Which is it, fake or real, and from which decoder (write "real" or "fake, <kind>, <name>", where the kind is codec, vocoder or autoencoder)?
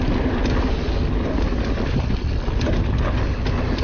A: real